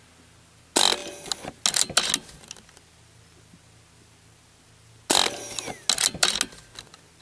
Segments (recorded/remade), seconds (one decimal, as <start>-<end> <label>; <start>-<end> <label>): 0.0-7.2 recorded